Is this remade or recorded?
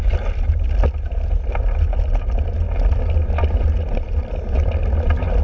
recorded